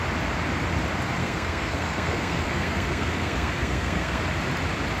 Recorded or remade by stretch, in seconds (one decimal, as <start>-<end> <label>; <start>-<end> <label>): 0.0-1.2 recorded; 1.2-4.2 remade; 4.2-5.0 recorded